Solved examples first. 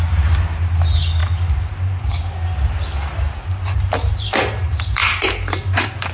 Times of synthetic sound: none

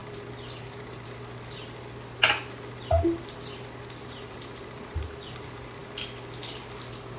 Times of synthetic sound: none

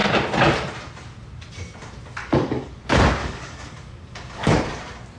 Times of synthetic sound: 2.2-2.7 (codec, DAC); 3.2-4.5

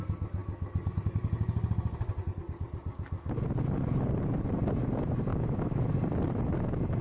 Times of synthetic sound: 5.3-5.9 (autoencoder, DAC-VAE)

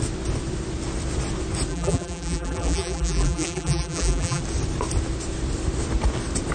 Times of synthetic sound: 1.7-4.4 (vocoder, BigVGAN v2)